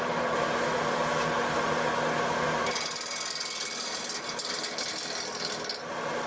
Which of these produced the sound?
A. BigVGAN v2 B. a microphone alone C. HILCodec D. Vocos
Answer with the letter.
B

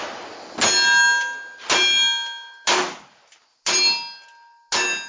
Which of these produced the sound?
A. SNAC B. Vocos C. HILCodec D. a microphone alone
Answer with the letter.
D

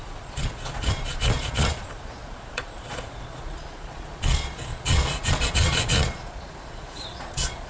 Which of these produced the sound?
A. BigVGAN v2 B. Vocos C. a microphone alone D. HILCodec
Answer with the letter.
B